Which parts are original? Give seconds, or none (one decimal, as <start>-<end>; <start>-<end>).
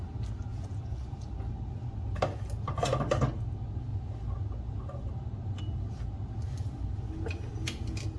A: 0.0-0.5; 1.3-8.2